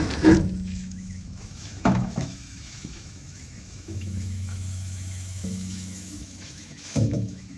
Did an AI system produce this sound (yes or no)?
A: yes